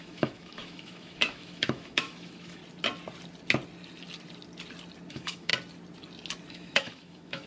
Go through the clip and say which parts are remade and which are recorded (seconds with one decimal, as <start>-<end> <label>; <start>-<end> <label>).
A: 0.0-2.6 remade; 2.6-5.1 recorded; 5.1-5.5 remade; 5.5-6.5 recorded; 6.5-7.5 remade